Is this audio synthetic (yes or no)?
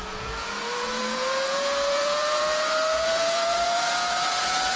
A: yes